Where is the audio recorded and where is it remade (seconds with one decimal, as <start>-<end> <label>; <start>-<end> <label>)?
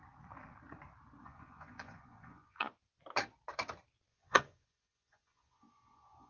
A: 0.0-1.2 recorded; 1.2-2.7 remade; 2.7-4.1 recorded; 4.1-6.3 remade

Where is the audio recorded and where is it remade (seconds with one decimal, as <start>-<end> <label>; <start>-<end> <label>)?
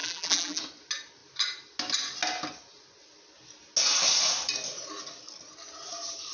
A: 0.0-0.6 remade; 0.6-6.3 recorded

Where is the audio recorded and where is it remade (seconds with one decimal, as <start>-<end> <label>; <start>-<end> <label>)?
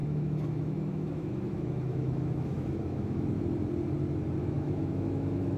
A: 0.0-3.4 remade; 3.4-4.4 recorded; 4.4-5.6 remade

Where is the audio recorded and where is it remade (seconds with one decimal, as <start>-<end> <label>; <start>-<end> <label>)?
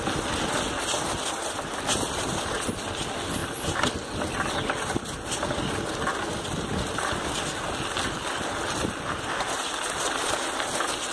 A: 0.0-11.1 recorded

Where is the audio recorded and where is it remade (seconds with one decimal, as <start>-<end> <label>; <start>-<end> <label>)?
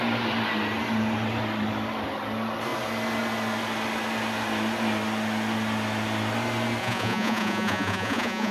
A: 0.0-6.8 recorded; 6.8-8.5 remade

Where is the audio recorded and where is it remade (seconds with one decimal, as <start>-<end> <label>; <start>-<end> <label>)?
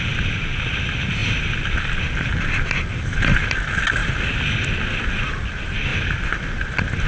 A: 0.0-7.1 recorded